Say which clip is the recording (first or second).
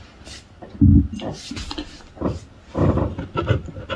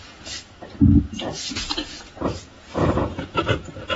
first